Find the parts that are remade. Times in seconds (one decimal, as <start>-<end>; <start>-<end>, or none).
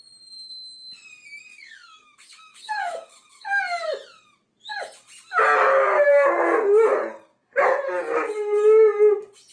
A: 1.5-3.6